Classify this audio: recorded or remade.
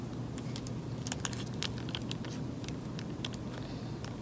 recorded